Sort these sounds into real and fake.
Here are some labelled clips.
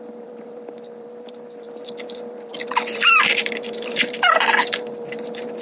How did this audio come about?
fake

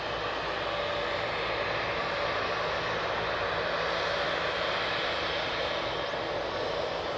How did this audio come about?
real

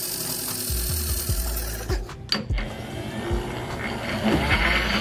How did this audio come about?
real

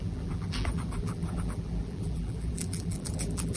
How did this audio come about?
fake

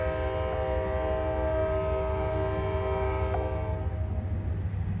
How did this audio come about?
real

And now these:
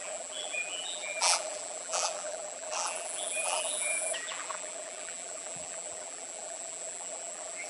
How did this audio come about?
fake